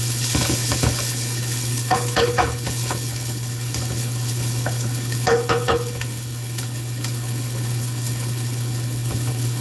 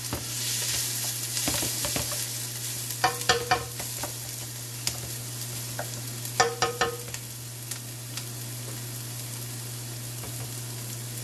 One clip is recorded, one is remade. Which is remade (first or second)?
first